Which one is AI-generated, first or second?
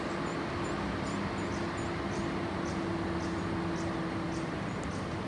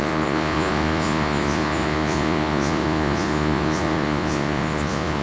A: second